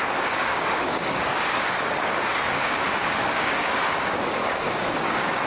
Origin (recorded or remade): remade